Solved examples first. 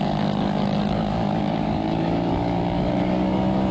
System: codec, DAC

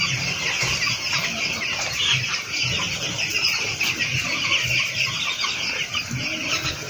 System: none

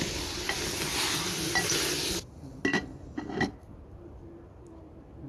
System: none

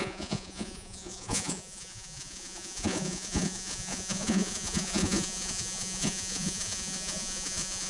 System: vocoder, Vocos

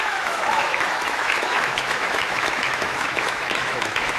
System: autoencoder, DAC-VAE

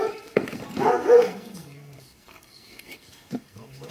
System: codec, SNAC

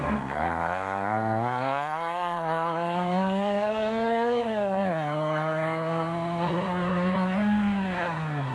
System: codec, SNAC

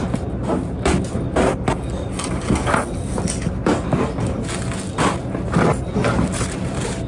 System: none